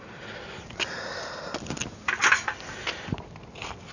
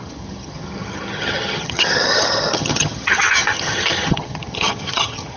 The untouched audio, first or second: first